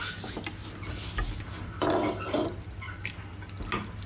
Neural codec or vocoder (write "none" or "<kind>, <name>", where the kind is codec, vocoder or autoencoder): none